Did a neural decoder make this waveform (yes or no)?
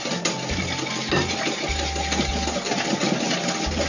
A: no